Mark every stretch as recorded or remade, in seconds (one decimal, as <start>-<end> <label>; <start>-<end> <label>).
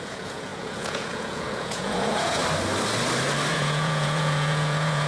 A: 0.0-2.4 remade; 2.4-3.5 recorded; 3.5-5.1 remade